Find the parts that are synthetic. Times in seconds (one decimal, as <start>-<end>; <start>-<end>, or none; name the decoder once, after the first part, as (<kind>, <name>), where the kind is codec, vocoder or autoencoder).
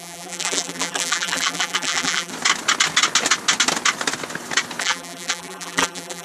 0.0-2.3 (vocoder, BigVGAN v2); 4.8-6.2